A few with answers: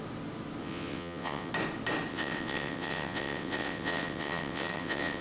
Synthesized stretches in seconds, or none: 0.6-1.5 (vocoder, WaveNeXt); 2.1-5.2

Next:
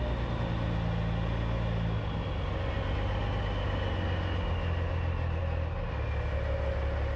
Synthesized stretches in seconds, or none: none

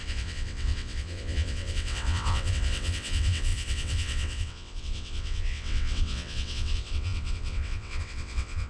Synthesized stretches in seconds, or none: 0.0-8.7 (vocoder, WaveNeXt)

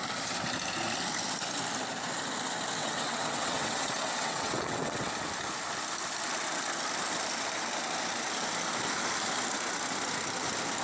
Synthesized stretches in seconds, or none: 2.8-5.1 (vocoder, WaveNeXt)

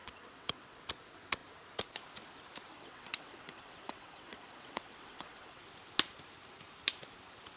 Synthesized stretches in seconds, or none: 0.0-0.8 (vocoder, WaveNeXt); 2.7-5.6

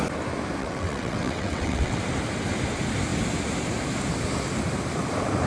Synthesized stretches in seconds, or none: 0.6-2.0 (vocoder, WaveNeXt)